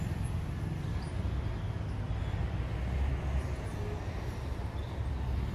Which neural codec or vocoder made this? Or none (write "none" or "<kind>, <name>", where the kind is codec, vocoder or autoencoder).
none